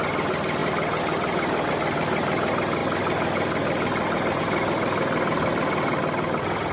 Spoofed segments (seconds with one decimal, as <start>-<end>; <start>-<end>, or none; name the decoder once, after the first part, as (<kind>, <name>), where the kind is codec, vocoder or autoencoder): none

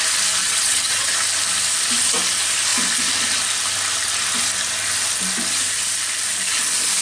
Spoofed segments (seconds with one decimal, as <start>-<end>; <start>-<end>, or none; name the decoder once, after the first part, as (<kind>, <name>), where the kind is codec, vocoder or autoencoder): 0.4-1.1 (vocoder, WaveNeXt)

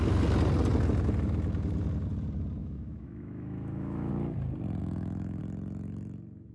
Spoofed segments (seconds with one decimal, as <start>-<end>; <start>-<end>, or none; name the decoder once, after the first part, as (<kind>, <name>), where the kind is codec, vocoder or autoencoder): 2.6-4.1 (autoencoder, DAC-VAE); 4.8-5.4

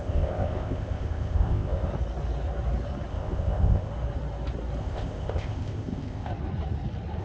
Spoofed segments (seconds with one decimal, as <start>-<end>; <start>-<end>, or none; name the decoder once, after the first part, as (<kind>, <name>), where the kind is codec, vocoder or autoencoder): 0.0-1.9 (codec, ZipCodec); 3.1-3.9; 4.8-6.3

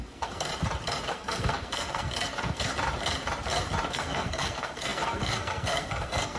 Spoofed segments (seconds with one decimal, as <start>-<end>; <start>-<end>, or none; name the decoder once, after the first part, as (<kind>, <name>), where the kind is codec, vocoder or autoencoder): 0.0-0.5 (codec, SNAC); 1.1-2.7; 3.9-6.4

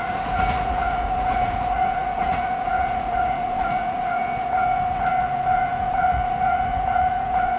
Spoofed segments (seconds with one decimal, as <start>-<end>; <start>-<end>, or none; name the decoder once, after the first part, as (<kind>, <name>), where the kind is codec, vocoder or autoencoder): 0.0-7.6 (vocoder, Vocos)

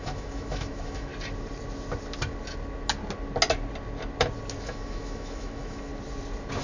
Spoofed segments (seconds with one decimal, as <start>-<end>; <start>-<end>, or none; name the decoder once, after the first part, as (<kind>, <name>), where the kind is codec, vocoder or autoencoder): 0.0-1.1 (autoencoder, DAC-VAE); 4.6-5.9